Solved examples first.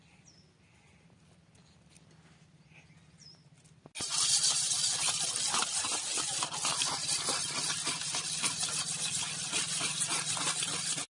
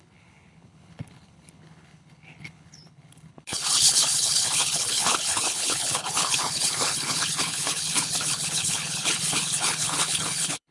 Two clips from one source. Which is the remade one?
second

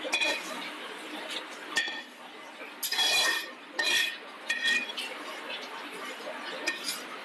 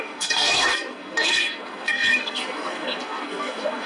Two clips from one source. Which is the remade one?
second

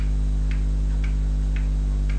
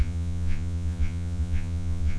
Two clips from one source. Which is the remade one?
second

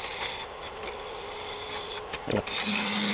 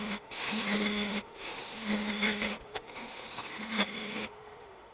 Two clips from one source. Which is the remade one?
second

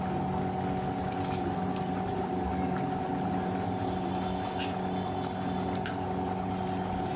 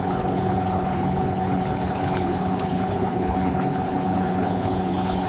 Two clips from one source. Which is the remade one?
second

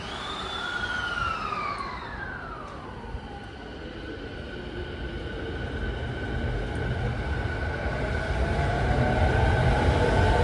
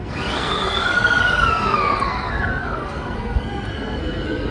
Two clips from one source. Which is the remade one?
second